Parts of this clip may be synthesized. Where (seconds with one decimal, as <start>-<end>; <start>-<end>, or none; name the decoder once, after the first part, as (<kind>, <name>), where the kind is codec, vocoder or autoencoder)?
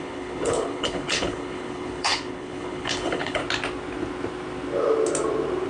0.0-3.4 (codec, HILCodec)